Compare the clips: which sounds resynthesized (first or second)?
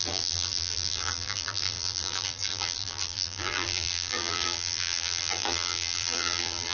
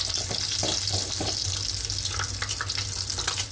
first